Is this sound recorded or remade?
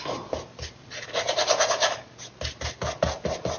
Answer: recorded